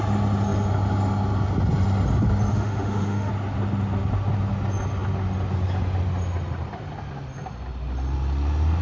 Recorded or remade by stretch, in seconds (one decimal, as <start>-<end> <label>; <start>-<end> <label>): 0.0-2.5 recorded; 2.5-3.3 remade; 3.3-8.8 recorded